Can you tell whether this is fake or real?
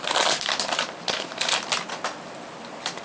real